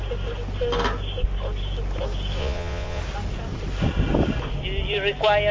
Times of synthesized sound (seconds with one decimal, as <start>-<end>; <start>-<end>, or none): 2.4-3.0